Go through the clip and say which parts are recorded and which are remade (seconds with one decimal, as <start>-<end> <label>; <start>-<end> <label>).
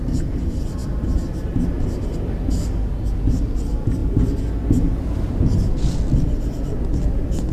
0.0-7.5 recorded